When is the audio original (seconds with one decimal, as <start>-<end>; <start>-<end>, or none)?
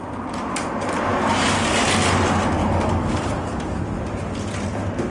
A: 0.0-2.6; 3.8-5.1